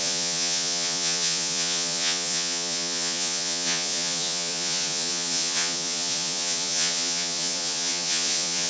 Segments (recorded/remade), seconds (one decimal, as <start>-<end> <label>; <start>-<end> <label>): 0.0-8.7 remade